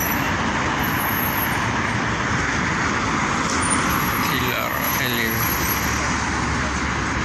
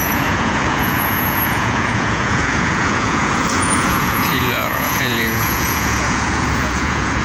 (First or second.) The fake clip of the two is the second